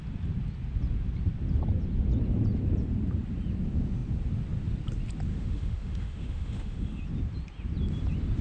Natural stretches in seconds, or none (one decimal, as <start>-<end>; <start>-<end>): 0.0-5.3; 7.0-8.4